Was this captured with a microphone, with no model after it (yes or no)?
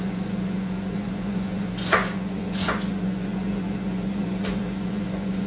no